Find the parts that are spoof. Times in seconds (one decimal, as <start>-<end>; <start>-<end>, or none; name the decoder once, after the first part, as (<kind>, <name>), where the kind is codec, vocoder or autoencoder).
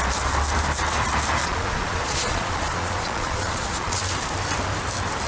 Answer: 1.4-4.0 (vocoder, Vocos)